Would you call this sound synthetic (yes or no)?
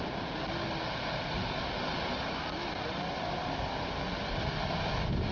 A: no